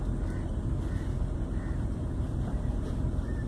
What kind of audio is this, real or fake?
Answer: fake